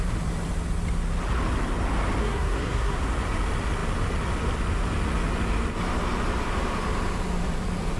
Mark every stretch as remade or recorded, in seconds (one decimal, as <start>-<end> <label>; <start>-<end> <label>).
0.0-2.2 recorded; 2.2-3.0 remade; 3.0-8.0 recorded